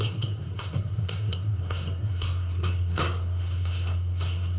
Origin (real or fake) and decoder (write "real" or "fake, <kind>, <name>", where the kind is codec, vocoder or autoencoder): fake, codec, SNAC